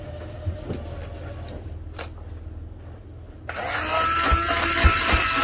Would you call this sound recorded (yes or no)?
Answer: yes